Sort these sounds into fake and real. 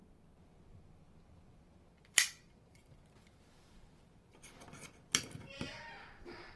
fake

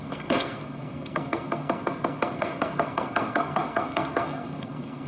fake